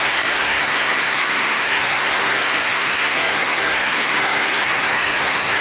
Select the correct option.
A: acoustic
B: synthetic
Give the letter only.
B